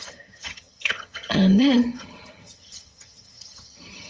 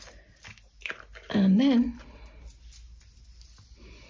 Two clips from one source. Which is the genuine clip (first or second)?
second